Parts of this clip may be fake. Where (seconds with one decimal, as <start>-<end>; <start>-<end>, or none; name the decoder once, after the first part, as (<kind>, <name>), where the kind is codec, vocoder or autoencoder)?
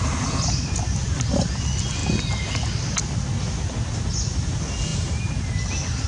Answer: none